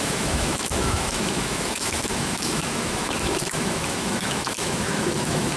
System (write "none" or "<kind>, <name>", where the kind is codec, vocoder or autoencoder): autoencoder, DAC-VAE